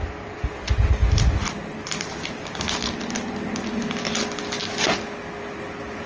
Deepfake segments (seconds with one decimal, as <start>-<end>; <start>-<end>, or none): none

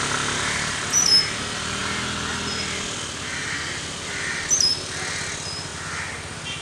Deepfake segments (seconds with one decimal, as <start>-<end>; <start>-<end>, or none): none